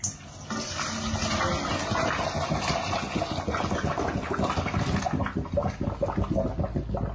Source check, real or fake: real